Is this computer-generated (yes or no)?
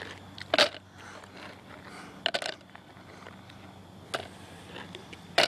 no